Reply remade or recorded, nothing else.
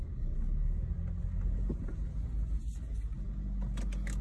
recorded